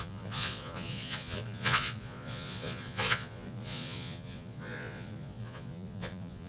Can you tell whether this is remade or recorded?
remade